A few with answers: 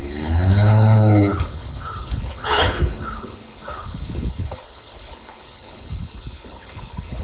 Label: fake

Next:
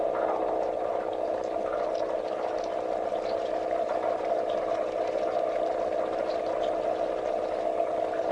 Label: real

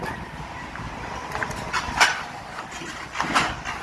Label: real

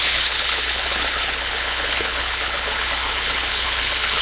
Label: fake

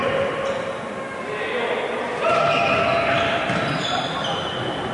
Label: real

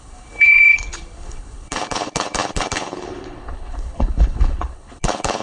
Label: fake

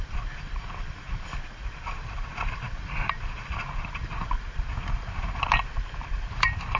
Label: real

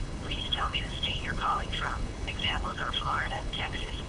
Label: fake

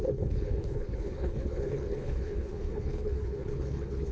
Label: fake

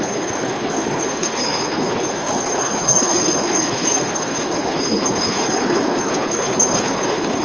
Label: fake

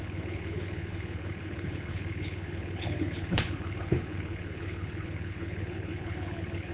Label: fake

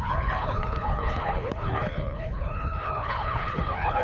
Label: fake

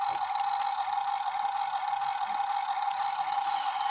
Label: real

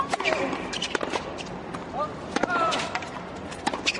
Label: real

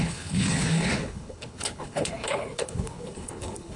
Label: fake